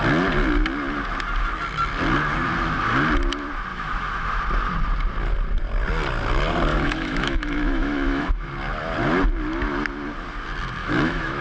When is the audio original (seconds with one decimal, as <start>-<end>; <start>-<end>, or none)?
0.0-3.7; 4.4-6.7; 8.5-10.8